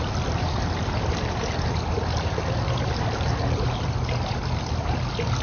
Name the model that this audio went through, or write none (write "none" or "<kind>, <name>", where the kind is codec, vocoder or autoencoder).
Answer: none